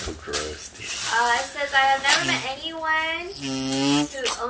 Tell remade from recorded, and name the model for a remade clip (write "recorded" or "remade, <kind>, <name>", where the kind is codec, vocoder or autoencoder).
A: recorded